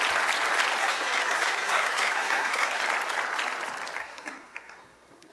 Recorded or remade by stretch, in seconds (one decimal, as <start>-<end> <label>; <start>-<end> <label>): 0.0-0.8 recorded; 0.8-2.8 remade; 2.8-4.0 recorded; 4.0-5.3 remade